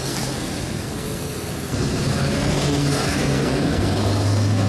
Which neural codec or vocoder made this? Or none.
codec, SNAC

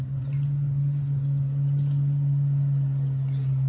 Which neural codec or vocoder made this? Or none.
none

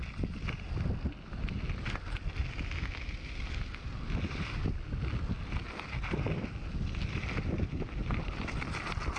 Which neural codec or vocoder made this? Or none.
none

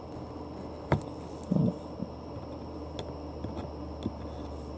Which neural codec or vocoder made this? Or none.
none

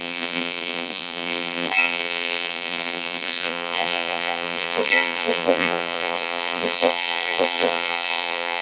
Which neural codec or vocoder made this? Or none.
vocoder, BigVGAN v2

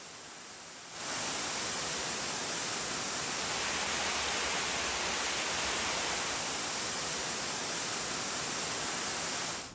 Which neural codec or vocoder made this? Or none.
none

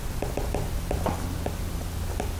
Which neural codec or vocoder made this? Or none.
none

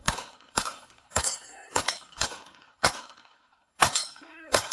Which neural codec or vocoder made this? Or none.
codec, SNAC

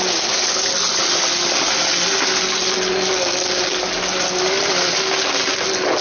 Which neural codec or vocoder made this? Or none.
none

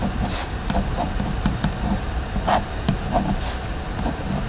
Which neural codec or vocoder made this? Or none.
none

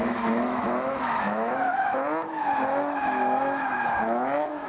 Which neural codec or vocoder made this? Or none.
autoencoder, DAC-VAE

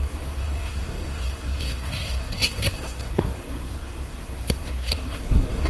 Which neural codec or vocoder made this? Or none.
codec, SNAC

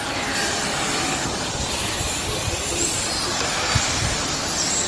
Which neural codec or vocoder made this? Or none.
vocoder, BigVGAN v2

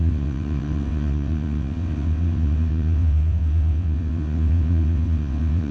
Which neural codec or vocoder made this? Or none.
vocoder, WaveNeXt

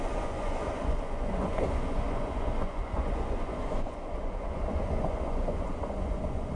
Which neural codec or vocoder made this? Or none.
vocoder, Vocos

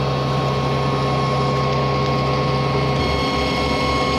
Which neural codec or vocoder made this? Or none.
none